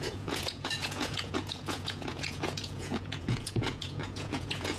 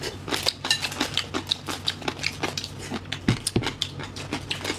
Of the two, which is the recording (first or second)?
second